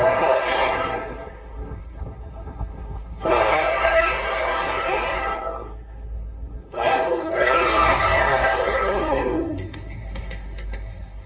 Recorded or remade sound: remade